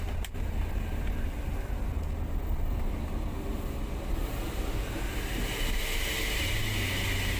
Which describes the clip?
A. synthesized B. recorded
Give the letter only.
B